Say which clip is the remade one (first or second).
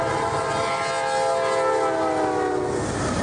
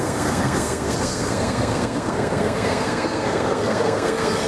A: second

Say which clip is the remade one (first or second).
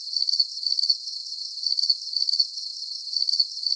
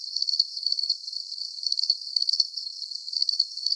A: second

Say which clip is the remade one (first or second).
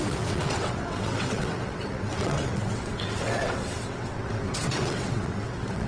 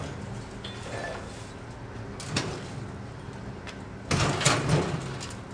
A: first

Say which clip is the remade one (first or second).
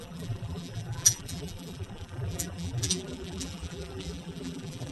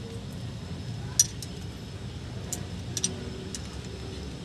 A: first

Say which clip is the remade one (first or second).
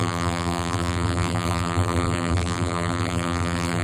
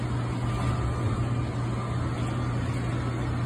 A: first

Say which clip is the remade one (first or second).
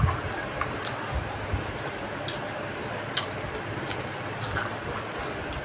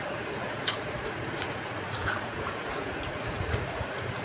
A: second